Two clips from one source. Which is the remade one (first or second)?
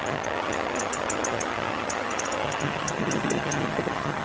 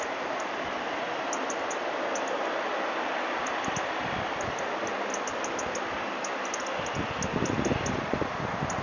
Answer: first